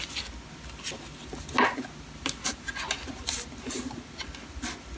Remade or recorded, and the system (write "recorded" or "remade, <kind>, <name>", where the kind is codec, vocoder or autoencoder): recorded